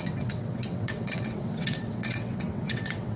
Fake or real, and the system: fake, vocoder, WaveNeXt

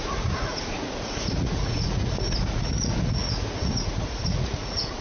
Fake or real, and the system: fake, vocoder, Vocos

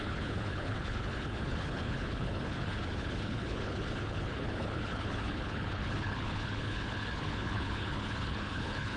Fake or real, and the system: fake, codec, HILCodec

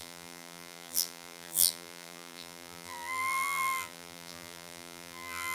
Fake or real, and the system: fake, vocoder, BigVGAN v2